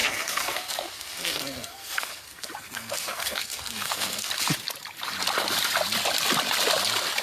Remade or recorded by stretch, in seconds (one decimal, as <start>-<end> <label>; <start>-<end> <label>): 0.0-4.3 remade; 4.3-7.2 recorded